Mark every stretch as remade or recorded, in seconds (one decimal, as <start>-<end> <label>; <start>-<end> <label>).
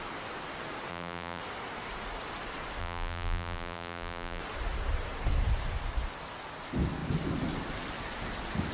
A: 0.0-0.9 recorded; 0.9-1.4 remade; 1.4-2.8 recorded; 2.8-4.4 remade; 4.4-8.7 recorded